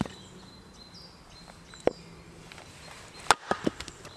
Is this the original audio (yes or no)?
yes